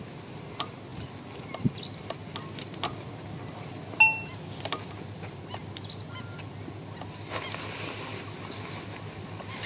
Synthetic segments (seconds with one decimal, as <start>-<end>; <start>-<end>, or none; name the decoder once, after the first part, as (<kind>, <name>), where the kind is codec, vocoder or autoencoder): none